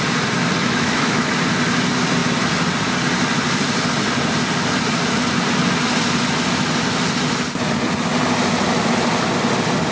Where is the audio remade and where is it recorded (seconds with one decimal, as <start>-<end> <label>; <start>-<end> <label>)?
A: 0.0-0.6 recorded; 0.6-1.3 remade; 1.3-9.9 recorded